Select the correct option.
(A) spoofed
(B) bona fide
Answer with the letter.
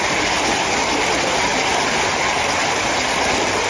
B